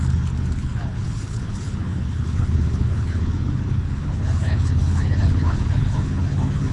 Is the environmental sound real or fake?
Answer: fake